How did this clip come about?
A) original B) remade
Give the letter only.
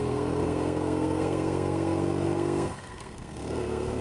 B